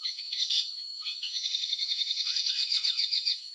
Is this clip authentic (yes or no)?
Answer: no